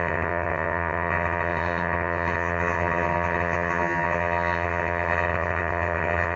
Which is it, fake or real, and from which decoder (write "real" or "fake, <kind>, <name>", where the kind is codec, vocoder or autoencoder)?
fake, vocoder, HiFi-GAN